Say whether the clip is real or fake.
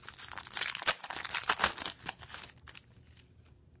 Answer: real